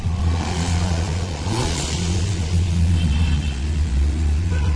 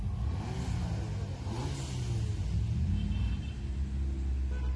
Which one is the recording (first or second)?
second